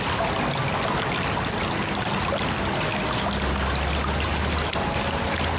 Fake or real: real